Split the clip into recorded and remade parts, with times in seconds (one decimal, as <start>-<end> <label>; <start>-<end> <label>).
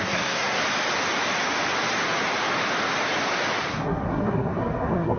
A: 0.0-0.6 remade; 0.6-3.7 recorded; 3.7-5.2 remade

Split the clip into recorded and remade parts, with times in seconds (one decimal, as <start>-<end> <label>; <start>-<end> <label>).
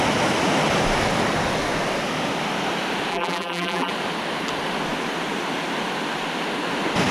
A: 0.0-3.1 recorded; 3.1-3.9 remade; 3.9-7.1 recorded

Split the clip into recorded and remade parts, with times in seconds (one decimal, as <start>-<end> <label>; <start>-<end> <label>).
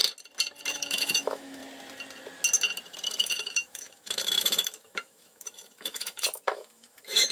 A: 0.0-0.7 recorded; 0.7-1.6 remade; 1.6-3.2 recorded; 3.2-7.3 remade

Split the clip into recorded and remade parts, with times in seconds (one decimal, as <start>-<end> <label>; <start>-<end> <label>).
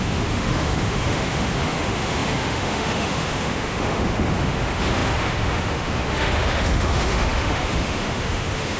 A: 0.0-8.8 remade